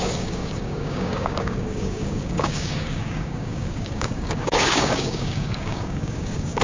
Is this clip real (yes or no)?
no